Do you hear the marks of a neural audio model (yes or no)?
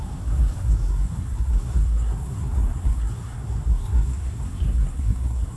yes